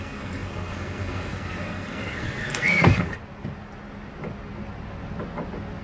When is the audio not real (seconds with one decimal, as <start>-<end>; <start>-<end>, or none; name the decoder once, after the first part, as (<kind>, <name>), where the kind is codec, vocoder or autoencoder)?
0.0-3.2 (codec, SNAC)